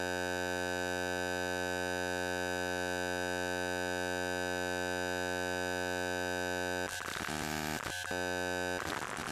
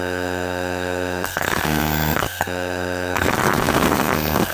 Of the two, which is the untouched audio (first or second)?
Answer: first